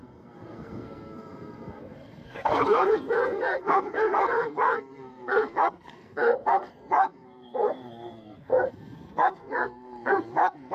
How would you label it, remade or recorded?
remade